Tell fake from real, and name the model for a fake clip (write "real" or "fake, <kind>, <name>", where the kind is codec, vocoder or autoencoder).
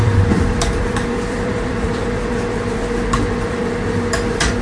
fake, vocoder, BigVGAN v2